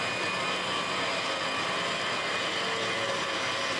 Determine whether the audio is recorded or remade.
recorded